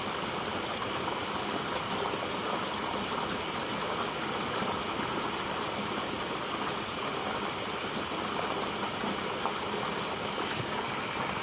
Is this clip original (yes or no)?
yes